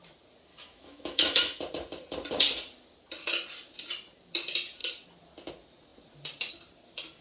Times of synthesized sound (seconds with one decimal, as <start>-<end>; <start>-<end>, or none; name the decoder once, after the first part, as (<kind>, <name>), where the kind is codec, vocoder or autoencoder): 0.5-1.6 (autoencoder, DAC-VAE)